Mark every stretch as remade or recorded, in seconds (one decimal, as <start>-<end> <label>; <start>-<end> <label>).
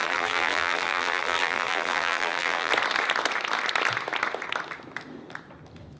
0.0-2.7 remade; 2.7-6.0 recorded